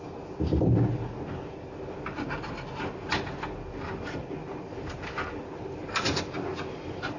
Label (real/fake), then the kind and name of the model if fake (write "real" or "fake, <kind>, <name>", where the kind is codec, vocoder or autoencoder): real